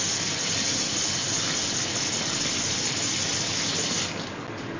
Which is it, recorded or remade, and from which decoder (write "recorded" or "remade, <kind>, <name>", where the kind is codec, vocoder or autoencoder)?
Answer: recorded